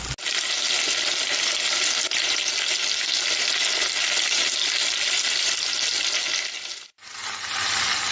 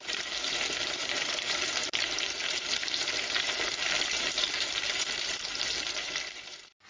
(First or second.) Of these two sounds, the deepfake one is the second